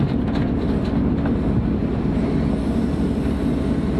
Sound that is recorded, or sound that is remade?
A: recorded